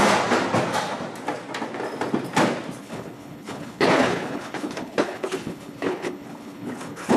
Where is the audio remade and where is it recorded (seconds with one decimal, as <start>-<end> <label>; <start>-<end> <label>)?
0.0-2.8 recorded; 2.8-7.2 remade